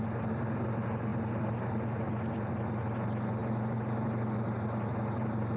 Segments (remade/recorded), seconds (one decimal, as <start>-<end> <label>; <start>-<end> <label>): 0.0-5.6 recorded